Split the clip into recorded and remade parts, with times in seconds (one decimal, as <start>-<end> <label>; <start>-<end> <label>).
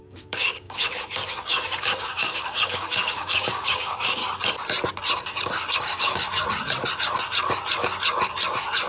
0.0-4.2 remade; 4.2-5.8 recorded; 5.8-6.2 remade; 6.2-8.9 recorded